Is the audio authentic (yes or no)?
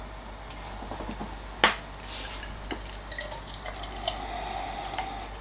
yes